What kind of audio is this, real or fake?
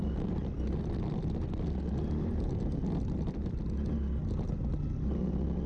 real